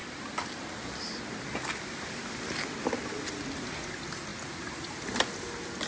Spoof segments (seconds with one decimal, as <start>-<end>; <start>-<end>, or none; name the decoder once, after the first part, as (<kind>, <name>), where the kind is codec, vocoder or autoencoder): none

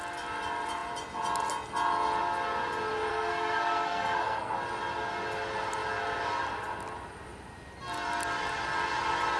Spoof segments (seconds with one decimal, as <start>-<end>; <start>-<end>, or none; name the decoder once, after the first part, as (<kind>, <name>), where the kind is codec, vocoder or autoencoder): 3.1-4.5 (codec, SNAC)

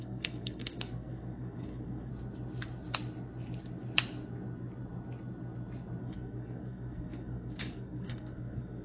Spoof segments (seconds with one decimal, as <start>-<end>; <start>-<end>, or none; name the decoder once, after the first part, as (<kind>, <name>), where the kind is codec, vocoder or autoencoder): 0.0-2.1 (codec, SNAC); 6.0-8.8